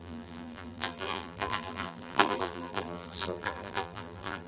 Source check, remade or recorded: remade